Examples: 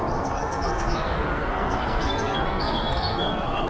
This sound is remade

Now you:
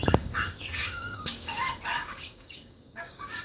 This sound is remade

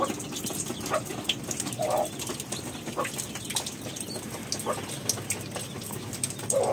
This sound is recorded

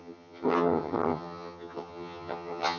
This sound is remade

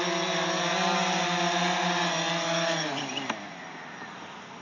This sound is recorded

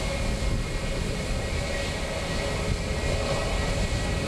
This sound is recorded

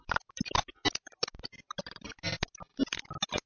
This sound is recorded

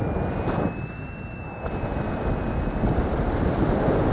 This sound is recorded